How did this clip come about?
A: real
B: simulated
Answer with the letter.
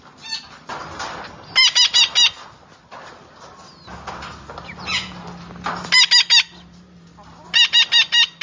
A